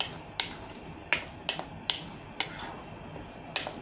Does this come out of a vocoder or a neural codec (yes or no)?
no